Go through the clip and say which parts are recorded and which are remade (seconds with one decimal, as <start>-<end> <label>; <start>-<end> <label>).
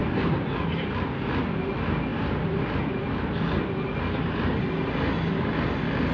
0.0-6.1 recorded